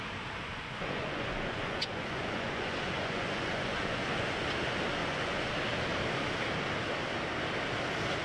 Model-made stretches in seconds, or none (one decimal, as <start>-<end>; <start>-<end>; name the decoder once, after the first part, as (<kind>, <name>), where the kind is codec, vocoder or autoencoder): 0.4-4.4 (vocoder, Vocos); 5.0-5.5